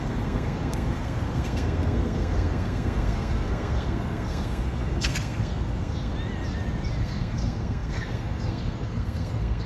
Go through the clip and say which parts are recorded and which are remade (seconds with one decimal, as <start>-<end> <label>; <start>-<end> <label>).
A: 0.0-6.1 remade; 6.1-7.0 recorded; 7.0-9.7 remade